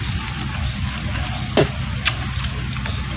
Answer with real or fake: real